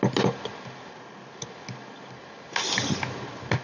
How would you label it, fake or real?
real